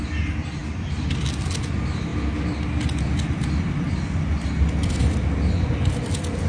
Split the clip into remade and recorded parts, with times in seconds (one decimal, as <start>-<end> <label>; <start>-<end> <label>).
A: 0.0-6.5 recorded